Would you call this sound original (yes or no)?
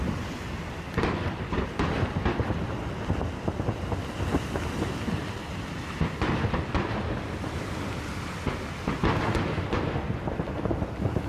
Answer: yes